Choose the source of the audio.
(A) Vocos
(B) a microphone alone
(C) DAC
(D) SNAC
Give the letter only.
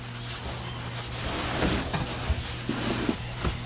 B